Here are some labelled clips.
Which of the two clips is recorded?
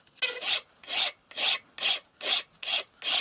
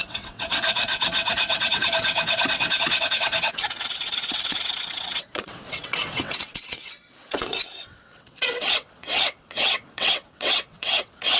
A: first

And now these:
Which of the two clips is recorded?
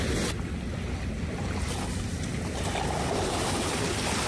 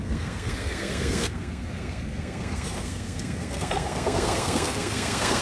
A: first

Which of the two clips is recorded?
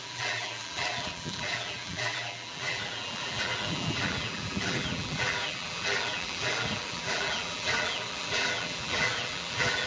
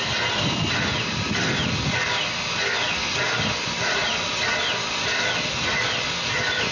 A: second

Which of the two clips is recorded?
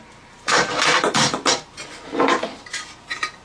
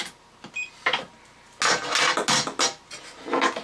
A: second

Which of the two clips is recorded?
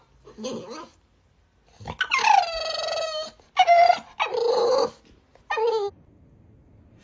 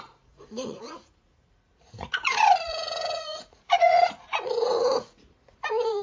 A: first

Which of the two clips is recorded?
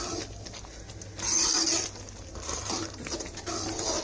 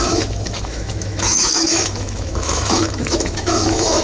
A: first